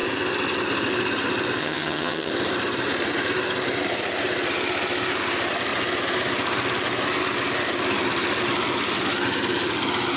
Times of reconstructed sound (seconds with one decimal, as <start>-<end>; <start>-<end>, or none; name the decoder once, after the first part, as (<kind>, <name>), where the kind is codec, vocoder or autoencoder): 1.6-2.3 (vocoder, HiFi-GAN)

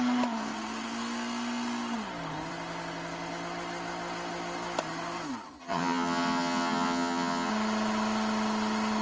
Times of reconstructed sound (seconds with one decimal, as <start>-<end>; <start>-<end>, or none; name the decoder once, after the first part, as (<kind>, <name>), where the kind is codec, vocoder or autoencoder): 5.6-7.5 (vocoder, HiFi-GAN)

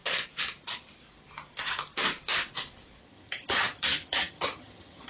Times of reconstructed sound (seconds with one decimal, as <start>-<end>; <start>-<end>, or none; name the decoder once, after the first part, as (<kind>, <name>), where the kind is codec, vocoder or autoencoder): 3.0-5.1 (vocoder, HiFi-GAN)

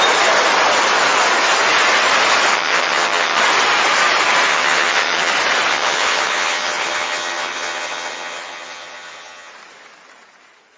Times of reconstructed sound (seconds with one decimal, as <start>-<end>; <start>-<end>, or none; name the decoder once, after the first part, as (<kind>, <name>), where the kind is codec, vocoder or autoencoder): 2.5-3.4 (vocoder, HiFi-GAN); 4.5-5.3; 5.7-9.5